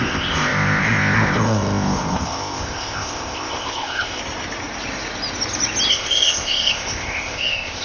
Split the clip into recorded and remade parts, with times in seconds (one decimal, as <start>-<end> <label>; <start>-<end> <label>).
0.0-4.2 remade; 4.2-5.9 recorded; 5.9-7.8 remade